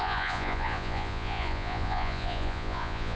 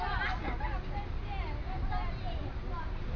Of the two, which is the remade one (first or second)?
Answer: first